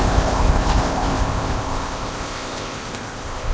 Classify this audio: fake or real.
fake